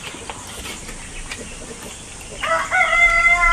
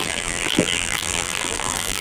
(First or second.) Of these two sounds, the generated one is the second